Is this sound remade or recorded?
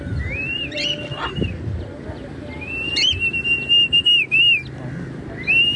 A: recorded